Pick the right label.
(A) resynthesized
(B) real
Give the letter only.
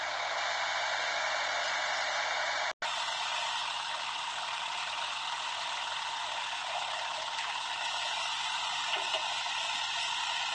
B